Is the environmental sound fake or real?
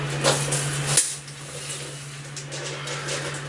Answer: real